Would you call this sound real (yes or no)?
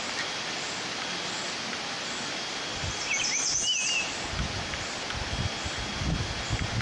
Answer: yes